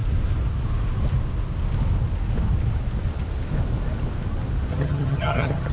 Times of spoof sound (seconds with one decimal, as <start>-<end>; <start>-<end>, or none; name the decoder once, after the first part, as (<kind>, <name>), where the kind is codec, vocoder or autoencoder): 4.7-5.7 (vocoder, HiFi-GAN)